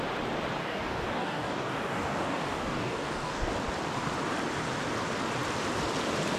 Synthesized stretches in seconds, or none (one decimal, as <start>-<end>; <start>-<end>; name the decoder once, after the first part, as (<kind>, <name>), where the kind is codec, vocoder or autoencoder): 0.6-3.5 (codec, DAC)